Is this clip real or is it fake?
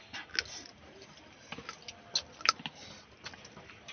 real